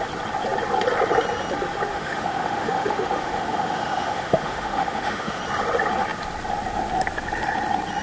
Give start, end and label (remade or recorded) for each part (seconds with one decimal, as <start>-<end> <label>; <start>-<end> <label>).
0.0-1.9 recorded; 1.9-5.4 remade; 5.4-8.0 recorded